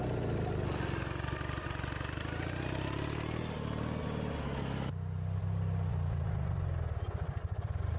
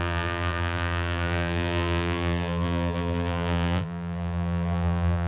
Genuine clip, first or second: first